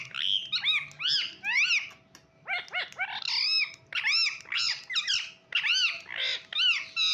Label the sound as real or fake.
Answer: real